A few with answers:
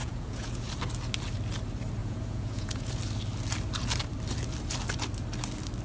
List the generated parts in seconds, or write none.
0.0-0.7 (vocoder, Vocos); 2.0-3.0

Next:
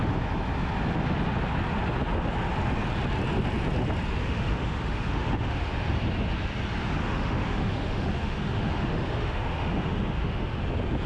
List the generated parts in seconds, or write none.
4.2-5.9 (autoencoder, DAC-VAE); 7.0-10.6

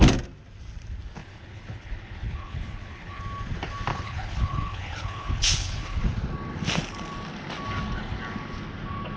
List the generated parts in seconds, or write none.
1.2-3.2 (codec, HILCodec); 3.9-6.0

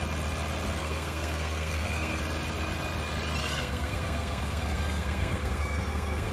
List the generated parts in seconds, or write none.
0.8-2.2 (codec, SNAC); 3.4-6.3